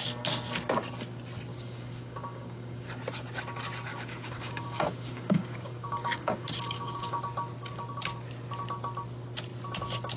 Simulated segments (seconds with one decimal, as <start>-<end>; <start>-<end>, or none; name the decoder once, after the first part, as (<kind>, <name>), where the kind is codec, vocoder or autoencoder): 1.5-2.9 (codec, DAC); 3.9-7.2